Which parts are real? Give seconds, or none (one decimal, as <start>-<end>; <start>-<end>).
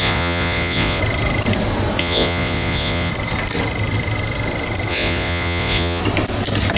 1.0-2.0; 3.1-4.9; 6.0-6.8